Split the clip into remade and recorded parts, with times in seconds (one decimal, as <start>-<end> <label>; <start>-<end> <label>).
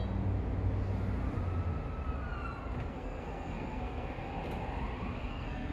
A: 0.0-2.9 recorded; 2.9-4.3 remade; 4.3-5.2 recorded; 5.2-5.7 remade